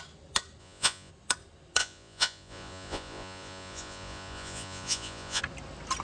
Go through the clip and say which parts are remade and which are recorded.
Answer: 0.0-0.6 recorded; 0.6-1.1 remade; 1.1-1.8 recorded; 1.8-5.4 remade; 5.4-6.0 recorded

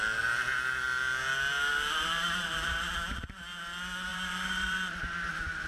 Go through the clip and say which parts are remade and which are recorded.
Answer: 0.0-1.7 recorded; 1.7-2.9 remade; 2.9-4.1 recorded; 4.1-5.3 remade; 5.3-5.7 recorded

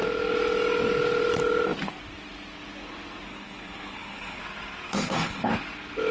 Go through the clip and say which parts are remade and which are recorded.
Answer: 0.0-3.3 recorded; 3.3-4.4 remade; 4.4-4.9 recorded; 4.9-5.5 remade; 5.5-6.1 recorded

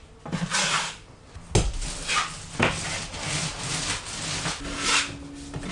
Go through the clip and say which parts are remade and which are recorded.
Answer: 0.0-5.7 recorded

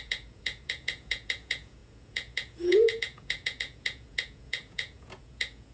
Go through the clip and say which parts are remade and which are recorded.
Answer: 0.0-5.7 remade